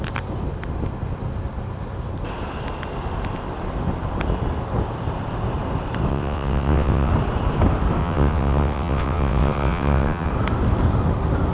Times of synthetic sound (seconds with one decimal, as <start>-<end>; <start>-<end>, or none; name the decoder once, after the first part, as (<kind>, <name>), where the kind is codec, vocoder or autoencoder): 6.1-7.1 (vocoder, WaveNeXt); 8.0-10.3